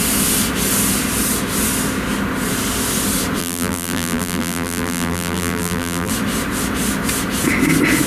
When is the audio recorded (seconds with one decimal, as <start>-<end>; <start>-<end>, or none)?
0.0-3.4; 6.1-8.1